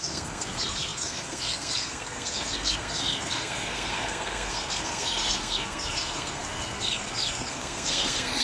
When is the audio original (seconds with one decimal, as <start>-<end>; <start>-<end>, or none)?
none